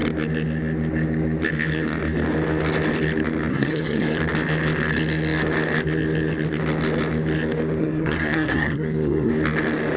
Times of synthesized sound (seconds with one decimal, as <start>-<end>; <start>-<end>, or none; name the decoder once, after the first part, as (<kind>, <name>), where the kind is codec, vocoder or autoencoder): 3.5-4.2 (codec, SNAC); 7.8-9.3